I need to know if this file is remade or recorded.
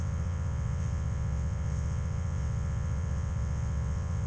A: remade